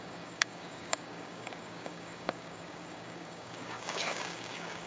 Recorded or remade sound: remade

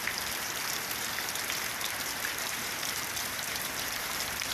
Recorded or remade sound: remade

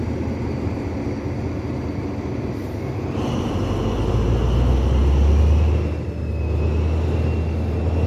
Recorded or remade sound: recorded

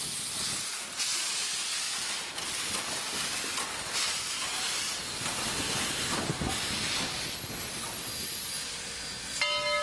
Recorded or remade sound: recorded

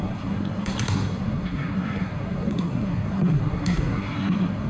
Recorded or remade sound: remade